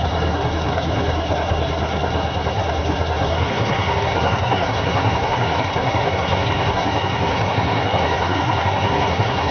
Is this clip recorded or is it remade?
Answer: remade